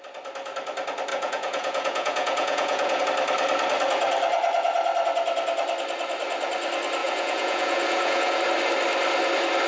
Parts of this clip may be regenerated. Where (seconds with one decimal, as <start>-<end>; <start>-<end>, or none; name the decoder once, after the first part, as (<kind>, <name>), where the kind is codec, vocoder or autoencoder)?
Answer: 1.1-3.0 (vocoder, Vocos); 7.0-8.4